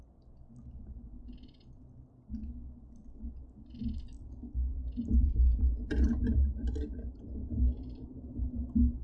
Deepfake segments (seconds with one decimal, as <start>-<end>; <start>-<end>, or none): 4.7-8.6